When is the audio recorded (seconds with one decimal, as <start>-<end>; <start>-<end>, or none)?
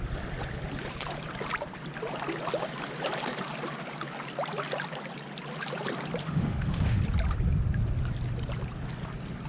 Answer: 0.0-6.2; 7.0-9.5